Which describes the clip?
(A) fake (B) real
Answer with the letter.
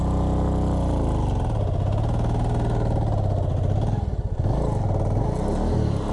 B